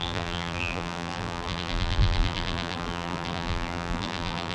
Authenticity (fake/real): fake